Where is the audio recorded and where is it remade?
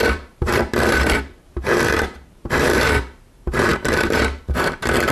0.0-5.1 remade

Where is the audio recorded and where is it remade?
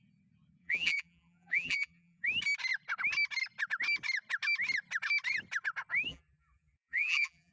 0.0-0.6 recorded; 0.6-2.2 remade; 2.2-6.1 recorded; 6.1-7.5 remade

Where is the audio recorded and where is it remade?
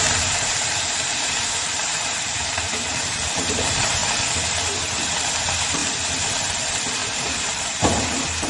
0.0-4.0 remade; 4.0-5.2 recorded; 5.2-5.8 remade; 5.8-6.5 recorded; 6.5-8.5 remade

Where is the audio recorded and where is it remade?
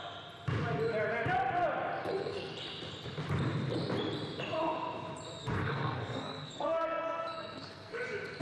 0.0-2.0 recorded; 2.0-2.5 remade; 2.5-5.4 recorded; 5.4-8.0 remade; 8.0-8.4 recorded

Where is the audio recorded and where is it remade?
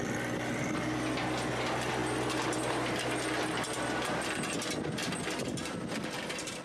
0.0-5.0 recorded; 5.0-6.6 remade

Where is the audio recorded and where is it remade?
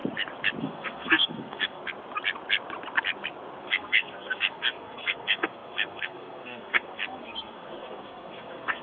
0.0-0.6 recorded; 0.6-1.8 remade; 1.8-3.6 recorded; 3.6-8.8 remade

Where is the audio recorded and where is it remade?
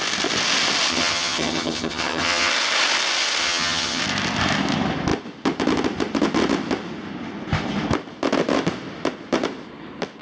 0.0-0.9 recorded; 0.9-2.5 remade; 2.5-3.4 recorded; 3.4-4.0 remade; 4.0-10.2 recorded